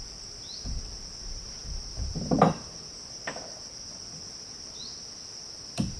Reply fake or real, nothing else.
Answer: fake